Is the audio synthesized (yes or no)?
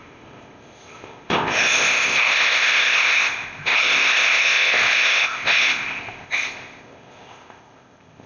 yes